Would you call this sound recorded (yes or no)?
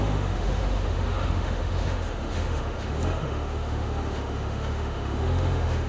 no